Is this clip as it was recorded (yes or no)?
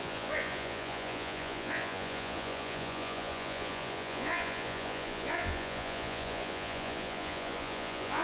no